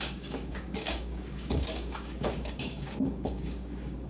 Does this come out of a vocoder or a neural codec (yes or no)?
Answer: yes